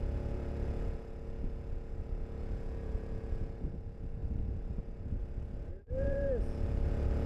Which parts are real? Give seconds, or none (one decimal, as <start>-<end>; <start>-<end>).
4.2-4.8; 5.2-5.7